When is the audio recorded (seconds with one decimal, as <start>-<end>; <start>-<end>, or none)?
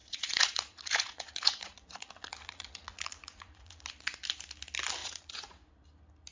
3.8-5.0; 5.7-6.3